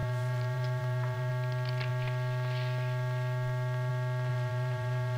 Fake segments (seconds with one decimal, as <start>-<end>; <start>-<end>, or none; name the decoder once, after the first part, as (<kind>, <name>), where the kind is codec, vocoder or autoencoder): 0.0-1.3 (vocoder, BigVGAN v2); 4.3-5.2